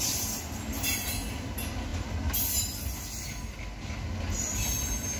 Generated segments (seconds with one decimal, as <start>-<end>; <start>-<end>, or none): none